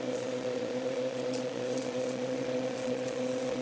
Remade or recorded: remade